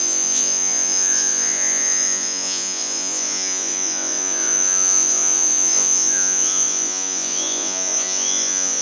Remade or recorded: remade